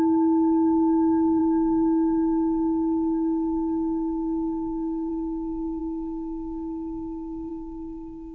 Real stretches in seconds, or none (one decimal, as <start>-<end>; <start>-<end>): none